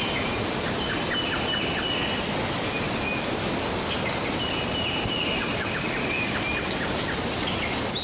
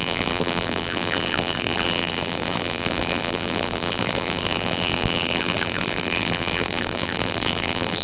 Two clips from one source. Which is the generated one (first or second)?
second